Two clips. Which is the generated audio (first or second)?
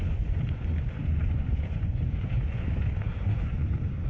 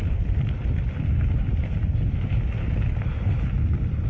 first